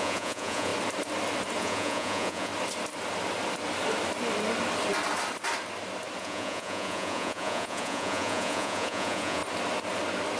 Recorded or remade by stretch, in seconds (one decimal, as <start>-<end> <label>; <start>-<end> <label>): 0.0-0.7 remade; 0.7-1.6 recorded; 1.6-2.5 remade; 2.5-6.2 recorded; 6.2-9.4 remade; 9.4-10.4 recorded